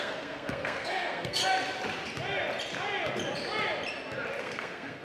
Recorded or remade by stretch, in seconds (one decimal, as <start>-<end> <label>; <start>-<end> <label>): 0.0-1.4 remade; 1.4-4.4 recorded; 4.4-5.0 remade